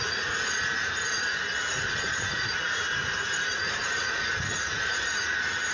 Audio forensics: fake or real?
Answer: fake